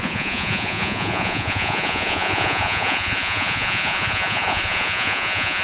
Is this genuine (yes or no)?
no